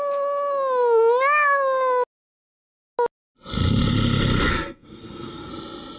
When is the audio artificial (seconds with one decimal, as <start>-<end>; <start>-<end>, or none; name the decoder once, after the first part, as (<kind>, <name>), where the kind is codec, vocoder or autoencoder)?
4.4-5.5 (codec, SNAC)